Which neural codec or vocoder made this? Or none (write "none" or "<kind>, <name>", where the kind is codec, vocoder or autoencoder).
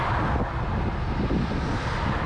none